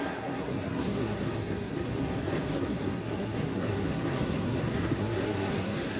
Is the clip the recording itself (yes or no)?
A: no